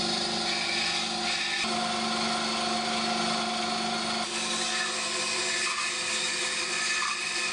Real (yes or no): yes